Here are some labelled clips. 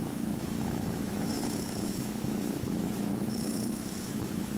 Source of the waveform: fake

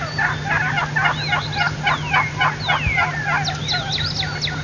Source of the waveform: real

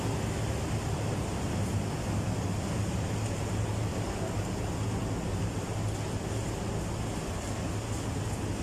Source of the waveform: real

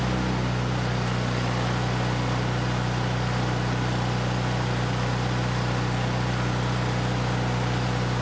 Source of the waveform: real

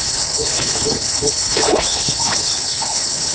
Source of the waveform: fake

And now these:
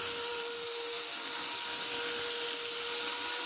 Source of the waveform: fake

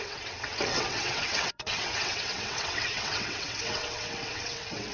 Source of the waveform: fake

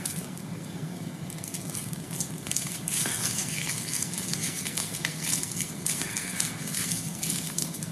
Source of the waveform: fake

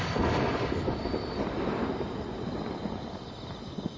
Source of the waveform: real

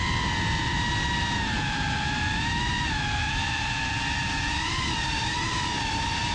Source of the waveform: fake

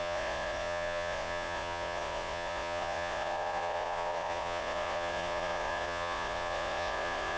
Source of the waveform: fake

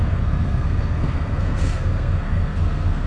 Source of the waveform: fake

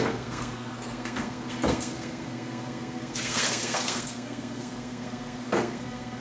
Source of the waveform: fake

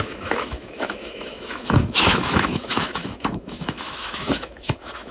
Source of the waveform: fake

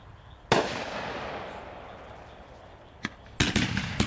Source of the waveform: real